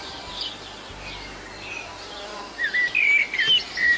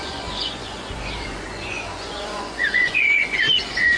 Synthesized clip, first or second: second